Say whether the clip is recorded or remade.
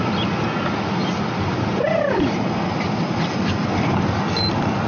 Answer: recorded